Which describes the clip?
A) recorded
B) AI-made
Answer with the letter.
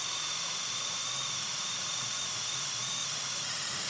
B